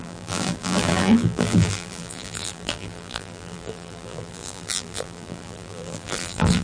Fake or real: fake